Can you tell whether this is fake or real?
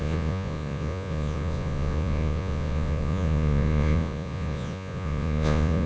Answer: fake